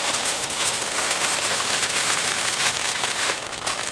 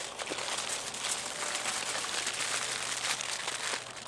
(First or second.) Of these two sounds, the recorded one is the second